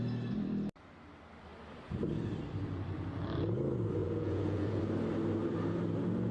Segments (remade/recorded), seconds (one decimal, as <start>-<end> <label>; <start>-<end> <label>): 0.0-4.0 recorded; 4.0-4.8 remade; 4.8-6.3 recorded

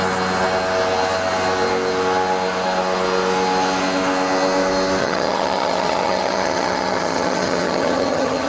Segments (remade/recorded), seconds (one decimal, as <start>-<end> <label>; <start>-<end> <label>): 0.0-5.0 recorded; 5.0-8.5 remade